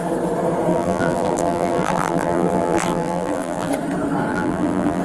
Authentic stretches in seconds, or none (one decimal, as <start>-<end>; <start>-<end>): 0.0-0.7; 3.7-4.3